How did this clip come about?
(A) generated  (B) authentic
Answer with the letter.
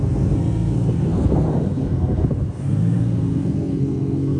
A